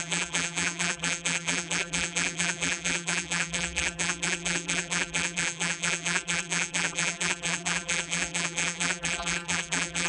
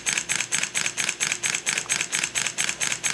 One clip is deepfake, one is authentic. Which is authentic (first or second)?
second